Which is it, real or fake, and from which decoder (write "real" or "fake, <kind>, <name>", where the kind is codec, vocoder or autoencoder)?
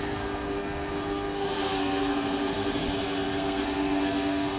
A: fake, codec, SNAC